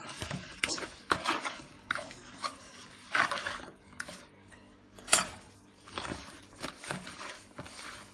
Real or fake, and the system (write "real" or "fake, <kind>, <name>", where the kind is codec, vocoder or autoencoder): fake, codec, DAC